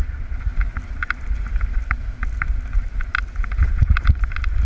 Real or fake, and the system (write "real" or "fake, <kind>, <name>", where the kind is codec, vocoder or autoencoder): fake, vocoder, BigVGAN v2